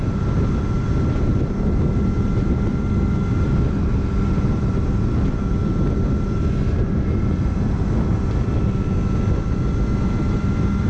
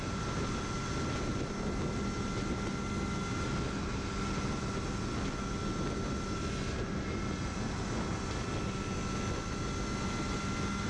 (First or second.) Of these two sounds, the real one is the second